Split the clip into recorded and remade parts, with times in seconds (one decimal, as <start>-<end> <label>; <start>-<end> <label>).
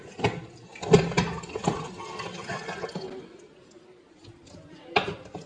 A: 0.0-5.5 recorded